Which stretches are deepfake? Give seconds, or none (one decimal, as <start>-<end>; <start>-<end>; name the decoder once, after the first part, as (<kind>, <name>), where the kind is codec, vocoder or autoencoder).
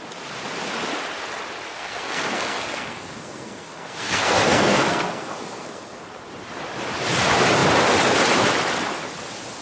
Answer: 1.7-6.0 (codec, SNAC)